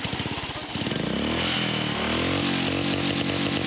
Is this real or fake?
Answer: real